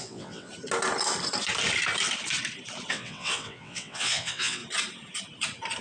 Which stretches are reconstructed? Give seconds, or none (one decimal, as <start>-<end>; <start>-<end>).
0.0-0.5; 2.9-4.6